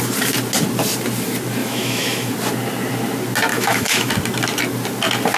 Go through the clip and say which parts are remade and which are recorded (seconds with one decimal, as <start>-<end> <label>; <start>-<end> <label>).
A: 0.0-1.6 recorded; 1.6-2.3 remade; 2.3-3.5 recorded; 3.5-4.1 remade; 4.1-5.4 recorded